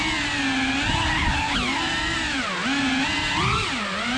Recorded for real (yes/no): yes